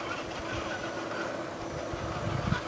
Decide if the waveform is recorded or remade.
recorded